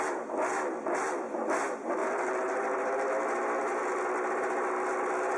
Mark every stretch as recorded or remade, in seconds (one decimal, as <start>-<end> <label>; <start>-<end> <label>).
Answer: 0.0-5.4 recorded